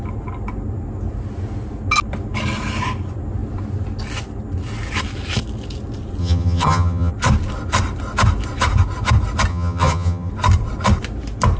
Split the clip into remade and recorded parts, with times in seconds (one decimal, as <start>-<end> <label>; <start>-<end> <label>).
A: 0.0-6.2 recorded; 6.2-7.1 remade; 7.1-9.5 recorded; 9.5-10.3 remade; 10.3-11.6 recorded